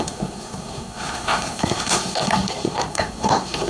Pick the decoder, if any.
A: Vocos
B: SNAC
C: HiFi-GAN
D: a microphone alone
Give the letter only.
B